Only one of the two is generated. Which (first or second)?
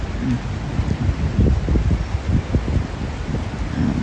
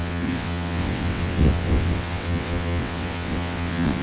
second